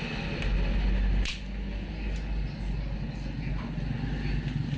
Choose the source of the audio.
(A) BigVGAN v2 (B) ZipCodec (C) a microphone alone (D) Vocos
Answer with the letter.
C